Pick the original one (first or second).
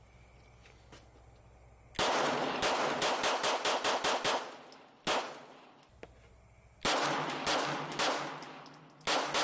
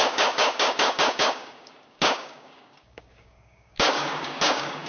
first